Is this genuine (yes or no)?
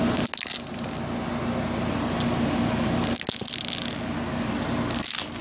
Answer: yes